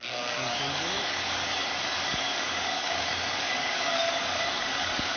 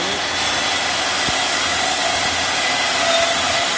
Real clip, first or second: second